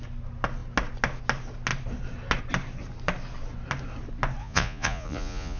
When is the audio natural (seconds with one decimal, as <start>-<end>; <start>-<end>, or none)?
0.0-4.4

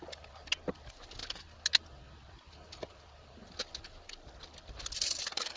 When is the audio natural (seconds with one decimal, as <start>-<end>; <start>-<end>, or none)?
0.0-5.6

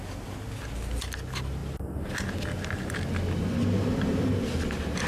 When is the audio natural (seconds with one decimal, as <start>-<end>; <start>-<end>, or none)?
0.0-5.1

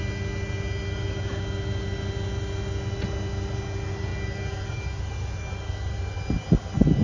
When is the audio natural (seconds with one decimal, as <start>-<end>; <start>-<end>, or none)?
0.0-7.0

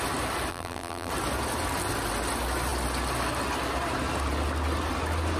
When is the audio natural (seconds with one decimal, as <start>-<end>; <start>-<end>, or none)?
0.0-0.5; 1.1-5.4

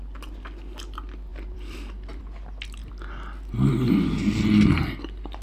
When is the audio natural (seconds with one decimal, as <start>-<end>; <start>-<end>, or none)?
0.0-1.3; 2.2-5.4

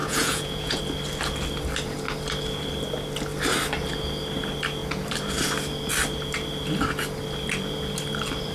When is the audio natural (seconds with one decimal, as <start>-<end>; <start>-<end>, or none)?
0.8-8.5

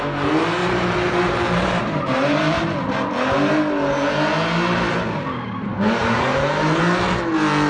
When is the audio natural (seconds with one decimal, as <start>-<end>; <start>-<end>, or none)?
0.0-0.6; 3.1-6.0; 6.8-7.7